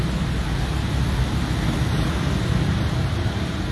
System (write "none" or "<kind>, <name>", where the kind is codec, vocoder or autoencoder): none